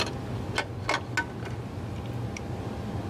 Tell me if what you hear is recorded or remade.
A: recorded